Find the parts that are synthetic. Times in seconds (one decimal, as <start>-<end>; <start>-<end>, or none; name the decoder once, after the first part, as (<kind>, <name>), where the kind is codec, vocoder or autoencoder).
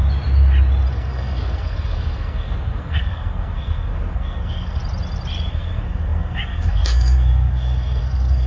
0.9-4.8 (codec, SNAC); 5.5-8.5